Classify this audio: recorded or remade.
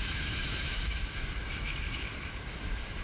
remade